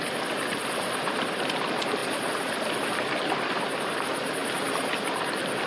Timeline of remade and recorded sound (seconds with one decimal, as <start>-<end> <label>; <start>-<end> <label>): 0.0-5.7 recorded